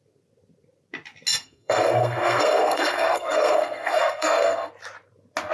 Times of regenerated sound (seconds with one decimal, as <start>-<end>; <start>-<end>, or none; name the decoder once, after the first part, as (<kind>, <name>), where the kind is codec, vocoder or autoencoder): 1.4-4.7 (codec, SNAC)